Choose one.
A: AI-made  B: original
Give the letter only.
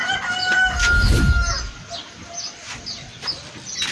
B